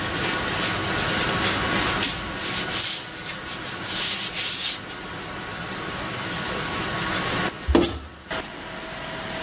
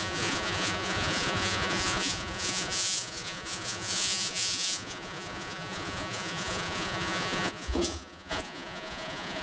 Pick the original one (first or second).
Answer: first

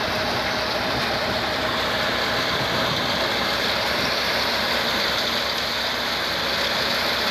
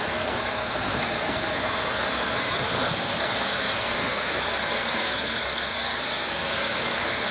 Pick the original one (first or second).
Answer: first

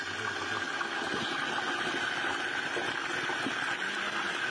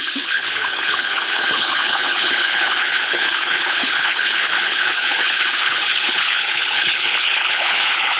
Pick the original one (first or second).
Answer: first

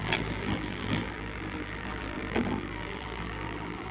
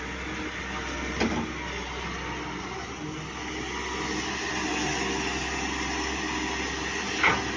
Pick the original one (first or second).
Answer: second